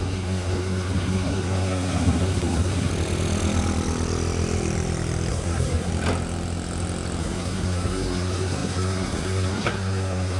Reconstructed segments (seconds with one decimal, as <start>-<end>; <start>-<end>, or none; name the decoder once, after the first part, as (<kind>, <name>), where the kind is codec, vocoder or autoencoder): 0.0-2.9 (codec, SNAC); 5.3-5.9; 7.2-10.4